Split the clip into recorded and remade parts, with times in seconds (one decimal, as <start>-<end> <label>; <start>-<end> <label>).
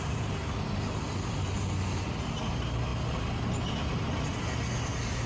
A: 0.0-5.3 recorded